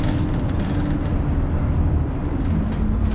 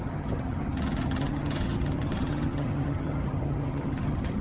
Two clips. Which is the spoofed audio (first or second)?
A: second